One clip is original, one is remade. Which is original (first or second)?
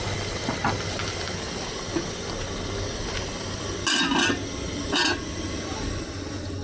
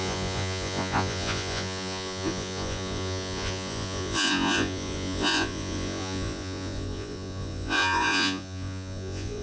first